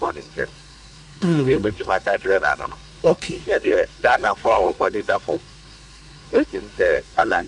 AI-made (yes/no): yes